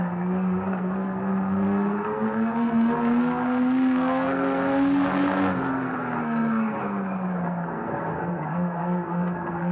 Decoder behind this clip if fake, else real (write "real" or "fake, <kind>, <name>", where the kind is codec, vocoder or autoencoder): fake, codec, SNAC